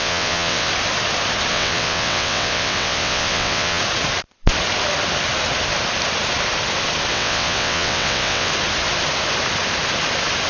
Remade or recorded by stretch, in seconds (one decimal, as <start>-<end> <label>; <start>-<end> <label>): 0.0-0.7 remade; 0.7-1.5 recorded; 1.5-3.8 remade; 3.8-7.1 recorded; 7.1-8.5 remade; 8.5-10.5 recorded